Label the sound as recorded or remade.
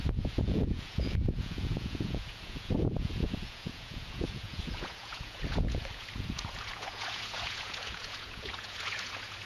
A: remade